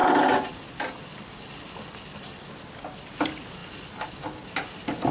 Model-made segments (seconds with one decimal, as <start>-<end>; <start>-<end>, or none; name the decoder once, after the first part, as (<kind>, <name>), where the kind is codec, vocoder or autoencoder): none